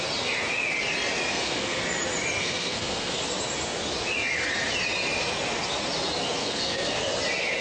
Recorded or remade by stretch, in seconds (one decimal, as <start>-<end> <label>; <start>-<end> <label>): 0.0-1.3 recorded; 1.3-1.8 remade; 1.8-2.4 recorded; 2.4-3.2 remade; 3.2-6.4 recorded; 6.4-7.0 remade; 7.0-7.6 recorded